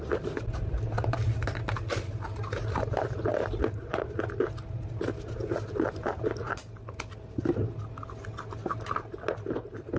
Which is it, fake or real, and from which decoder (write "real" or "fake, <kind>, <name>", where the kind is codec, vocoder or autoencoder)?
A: real